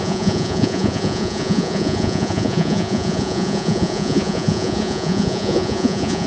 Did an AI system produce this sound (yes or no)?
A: yes